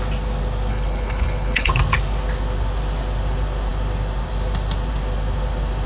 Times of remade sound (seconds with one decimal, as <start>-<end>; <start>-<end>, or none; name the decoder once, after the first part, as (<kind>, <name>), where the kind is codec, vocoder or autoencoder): 0.7-1.7 (codec, HILCodec)